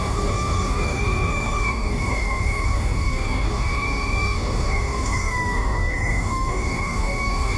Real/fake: fake